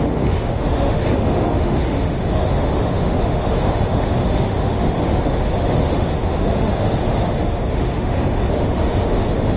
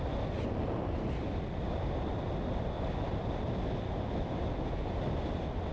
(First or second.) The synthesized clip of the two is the first